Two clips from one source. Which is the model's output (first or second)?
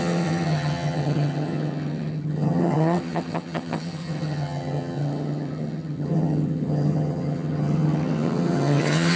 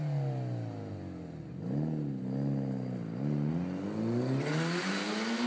first